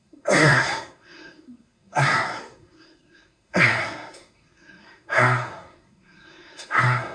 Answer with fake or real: fake